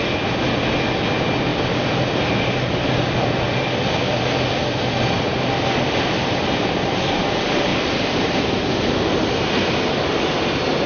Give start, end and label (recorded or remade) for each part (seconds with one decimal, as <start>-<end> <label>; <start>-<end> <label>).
0.0-10.9 remade